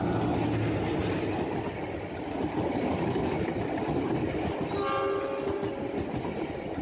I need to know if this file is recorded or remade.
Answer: recorded